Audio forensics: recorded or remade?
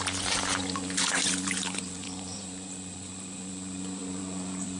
remade